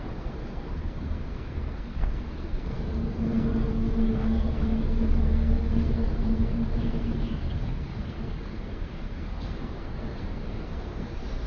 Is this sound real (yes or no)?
no